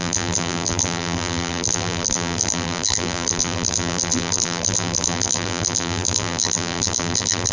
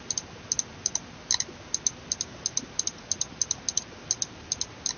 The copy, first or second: first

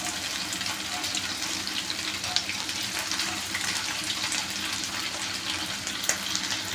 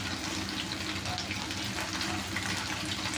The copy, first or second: first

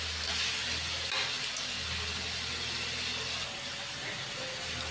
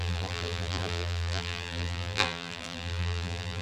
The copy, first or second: second